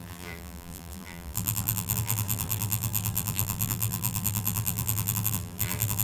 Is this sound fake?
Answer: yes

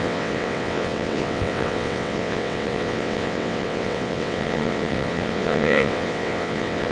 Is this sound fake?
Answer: yes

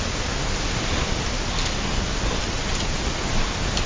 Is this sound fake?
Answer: no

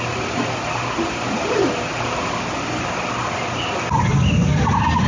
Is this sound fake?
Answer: no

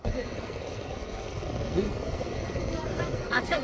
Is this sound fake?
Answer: yes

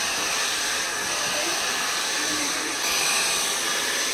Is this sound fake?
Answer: no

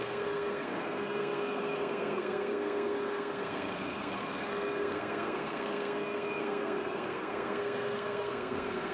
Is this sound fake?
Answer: yes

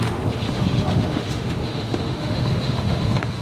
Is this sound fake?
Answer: yes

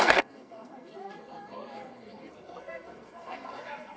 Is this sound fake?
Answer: yes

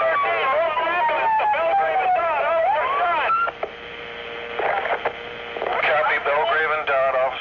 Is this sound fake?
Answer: no